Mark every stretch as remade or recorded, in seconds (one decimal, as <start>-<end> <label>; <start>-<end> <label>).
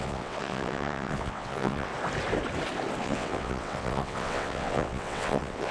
0.0-1.9 remade; 1.9-3.0 recorded; 3.0-5.7 remade